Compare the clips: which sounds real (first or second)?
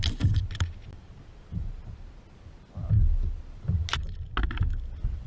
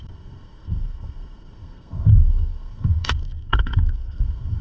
first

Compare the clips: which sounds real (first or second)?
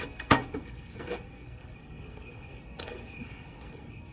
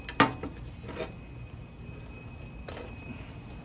second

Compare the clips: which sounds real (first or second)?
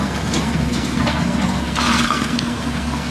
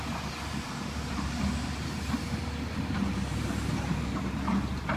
second